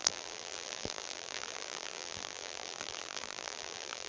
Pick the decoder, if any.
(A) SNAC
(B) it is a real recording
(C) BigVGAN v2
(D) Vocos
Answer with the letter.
C